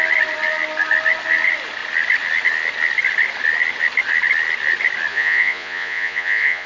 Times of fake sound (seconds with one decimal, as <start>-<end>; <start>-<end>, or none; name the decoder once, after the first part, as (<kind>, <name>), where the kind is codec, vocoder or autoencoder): 5.1-6.7 (vocoder, Vocos)